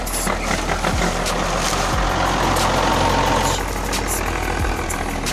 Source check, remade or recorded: recorded